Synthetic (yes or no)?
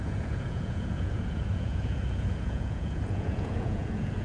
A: yes